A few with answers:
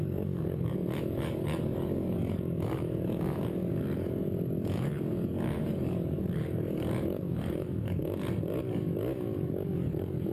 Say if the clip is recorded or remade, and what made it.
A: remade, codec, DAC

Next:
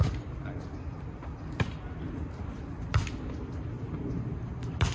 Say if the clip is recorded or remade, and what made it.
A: recorded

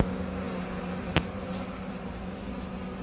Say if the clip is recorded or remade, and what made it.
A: recorded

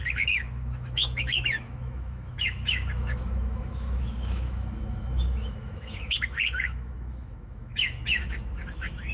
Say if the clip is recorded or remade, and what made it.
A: remade, autoencoder, DAC-VAE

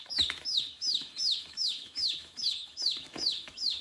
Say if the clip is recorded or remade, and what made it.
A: remade, autoencoder, DAC-VAE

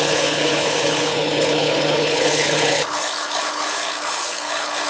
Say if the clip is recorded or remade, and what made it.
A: remade, codec, HILCodec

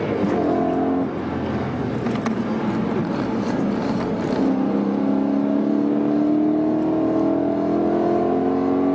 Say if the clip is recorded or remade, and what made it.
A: recorded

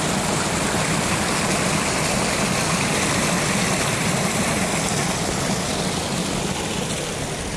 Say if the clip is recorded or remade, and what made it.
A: recorded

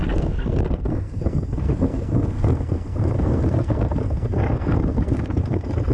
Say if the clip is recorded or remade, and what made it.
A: remade, codec, SNAC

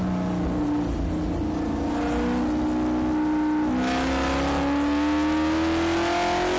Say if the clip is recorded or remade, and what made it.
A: recorded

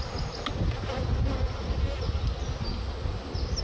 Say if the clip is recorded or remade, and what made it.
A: recorded